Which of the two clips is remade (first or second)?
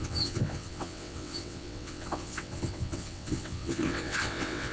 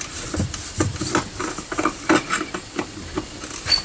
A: first